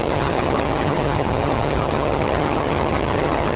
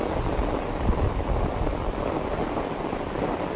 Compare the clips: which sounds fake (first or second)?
first